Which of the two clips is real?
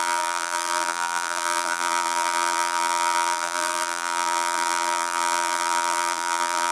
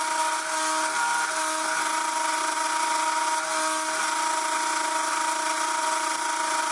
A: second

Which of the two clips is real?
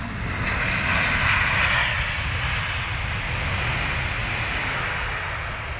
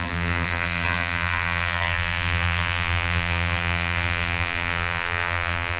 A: first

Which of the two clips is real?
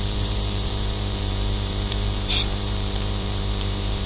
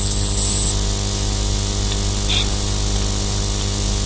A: second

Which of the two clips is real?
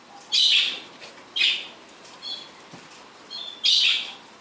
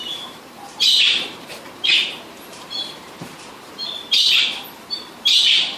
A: first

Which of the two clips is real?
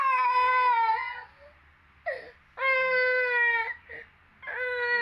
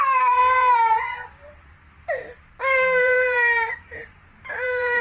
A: first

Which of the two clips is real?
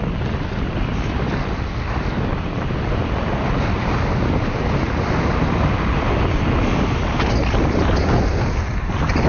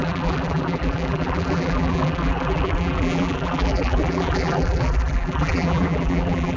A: first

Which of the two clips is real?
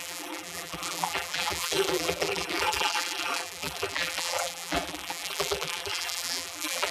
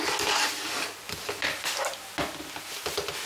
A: second